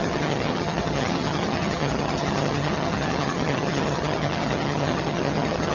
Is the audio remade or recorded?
remade